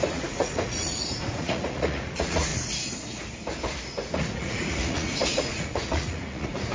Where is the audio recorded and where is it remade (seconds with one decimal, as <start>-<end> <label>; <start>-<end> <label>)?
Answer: 0.0-2.5 remade; 2.5-3.9 recorded; 3.9-6.7 remade